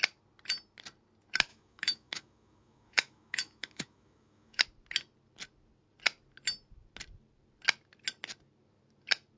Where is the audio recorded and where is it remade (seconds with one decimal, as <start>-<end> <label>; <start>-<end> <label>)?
0.0-1.5 recorded; 1.5-4.6 remade; 4.6-9.4 recorded